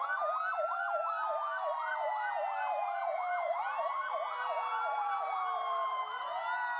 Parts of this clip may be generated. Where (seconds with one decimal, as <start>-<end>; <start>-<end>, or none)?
1.9-6.0